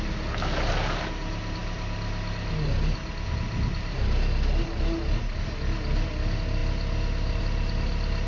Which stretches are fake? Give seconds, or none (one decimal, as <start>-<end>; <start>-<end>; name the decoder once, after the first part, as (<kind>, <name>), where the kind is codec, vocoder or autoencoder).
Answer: none

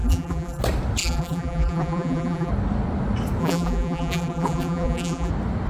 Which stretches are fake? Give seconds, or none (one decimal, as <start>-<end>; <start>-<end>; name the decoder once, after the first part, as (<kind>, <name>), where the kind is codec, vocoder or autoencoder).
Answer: 0.0-0.6 (vocoder, BigVGAN v2); 1.0-2.5; 3.4-5.3

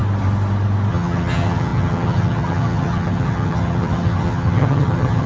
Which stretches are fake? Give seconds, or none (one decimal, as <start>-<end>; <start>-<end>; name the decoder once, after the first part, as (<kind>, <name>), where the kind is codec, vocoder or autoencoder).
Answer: 0.9-5.3 (vocoder, HiFi-GAN)

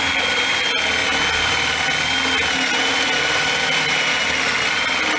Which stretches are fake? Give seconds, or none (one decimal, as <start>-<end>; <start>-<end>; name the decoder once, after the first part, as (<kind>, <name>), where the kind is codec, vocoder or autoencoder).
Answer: none

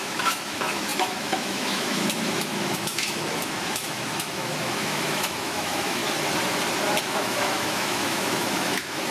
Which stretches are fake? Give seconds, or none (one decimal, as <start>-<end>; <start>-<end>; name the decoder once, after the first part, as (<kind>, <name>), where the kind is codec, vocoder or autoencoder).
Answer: 0.0-6.0 (autoencoder, DAC-VAE); 7.0-9.1